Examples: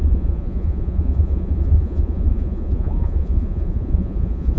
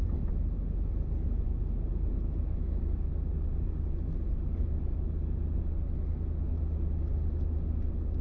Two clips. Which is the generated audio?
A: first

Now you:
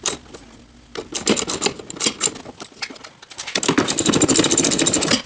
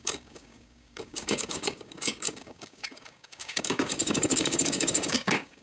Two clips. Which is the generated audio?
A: second